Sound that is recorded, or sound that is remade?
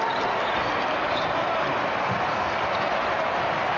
recorded